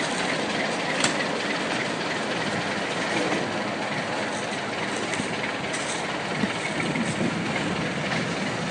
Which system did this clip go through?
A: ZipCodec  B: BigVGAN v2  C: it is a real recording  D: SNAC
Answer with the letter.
C